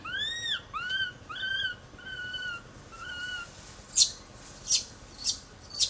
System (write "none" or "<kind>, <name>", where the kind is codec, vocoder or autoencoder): none